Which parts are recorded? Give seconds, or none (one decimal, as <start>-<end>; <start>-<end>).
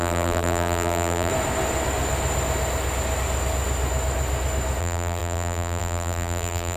1.3-4.8